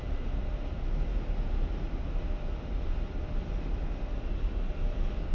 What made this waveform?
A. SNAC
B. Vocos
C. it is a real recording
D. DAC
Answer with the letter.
C